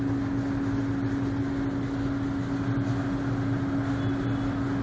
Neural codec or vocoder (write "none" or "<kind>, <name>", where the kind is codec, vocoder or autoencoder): none